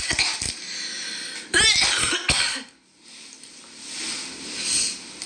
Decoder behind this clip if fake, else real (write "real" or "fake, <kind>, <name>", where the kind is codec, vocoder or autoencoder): real